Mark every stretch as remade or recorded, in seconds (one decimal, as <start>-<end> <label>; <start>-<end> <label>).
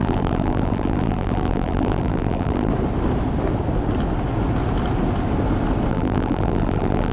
0.0-2.7 remade; 2.7-5.9 recorded; 5.9-7.1 remade